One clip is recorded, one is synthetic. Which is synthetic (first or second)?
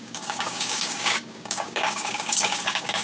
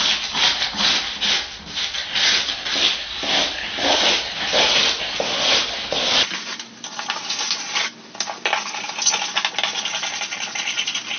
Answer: first